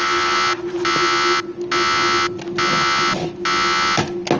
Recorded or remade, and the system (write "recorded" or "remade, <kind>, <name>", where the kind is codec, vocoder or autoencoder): recorded